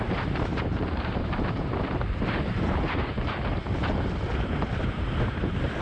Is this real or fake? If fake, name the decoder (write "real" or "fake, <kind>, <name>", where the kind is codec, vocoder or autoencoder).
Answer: fake, vocoder, BigVGAN v2